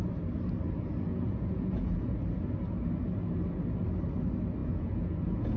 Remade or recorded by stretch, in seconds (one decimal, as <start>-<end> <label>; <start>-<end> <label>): 0.0-1.1 recorded; 1.1-2.2 remade; 2.2-4.6 recorded; 4.6-5.6 remade